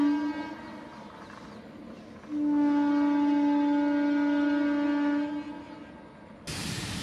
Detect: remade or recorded recorded